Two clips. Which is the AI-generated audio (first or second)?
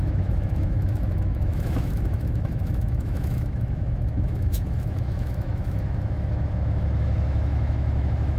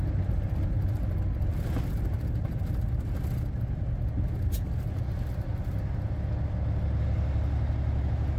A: first